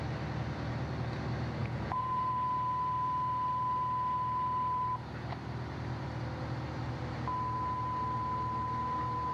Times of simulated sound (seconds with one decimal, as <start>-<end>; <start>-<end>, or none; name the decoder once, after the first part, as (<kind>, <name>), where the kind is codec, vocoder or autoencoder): 1.6-2.3 (vocoder, Vocos)